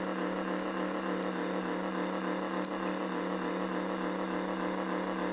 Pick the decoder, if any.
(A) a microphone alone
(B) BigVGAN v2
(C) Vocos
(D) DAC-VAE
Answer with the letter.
A